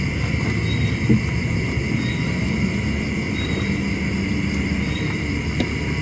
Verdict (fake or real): real